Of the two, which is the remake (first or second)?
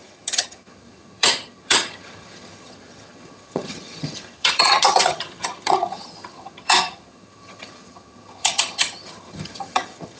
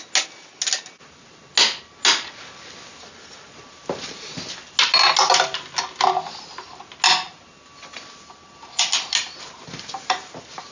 first